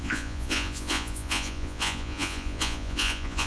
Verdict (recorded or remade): remade